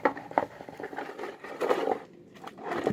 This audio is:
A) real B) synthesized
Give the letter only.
A